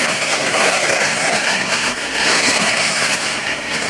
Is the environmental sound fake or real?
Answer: fake